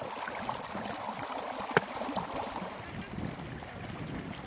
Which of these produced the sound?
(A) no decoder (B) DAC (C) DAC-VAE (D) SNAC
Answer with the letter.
A